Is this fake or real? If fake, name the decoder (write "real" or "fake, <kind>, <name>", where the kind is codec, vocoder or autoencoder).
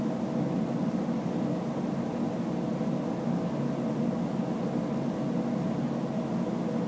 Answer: real